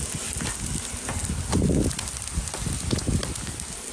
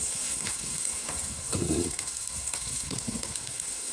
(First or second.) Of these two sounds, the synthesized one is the second